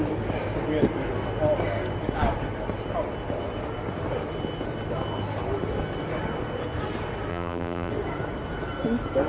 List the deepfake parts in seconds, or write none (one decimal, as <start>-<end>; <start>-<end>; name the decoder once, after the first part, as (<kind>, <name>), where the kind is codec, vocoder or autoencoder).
7.3-7.9 (vocoder, BigVGAN v2)